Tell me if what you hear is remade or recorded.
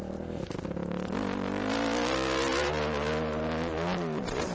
recorded